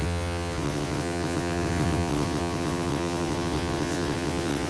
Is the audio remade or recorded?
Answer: remade